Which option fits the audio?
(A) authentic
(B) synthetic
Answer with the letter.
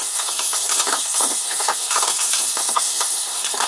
B